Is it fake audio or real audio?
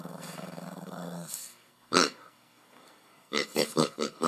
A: fake